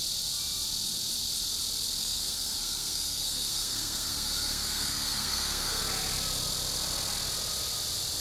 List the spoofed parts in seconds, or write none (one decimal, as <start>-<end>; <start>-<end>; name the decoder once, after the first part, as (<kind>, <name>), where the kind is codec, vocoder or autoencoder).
2.0-5.8 (codec, SNAC)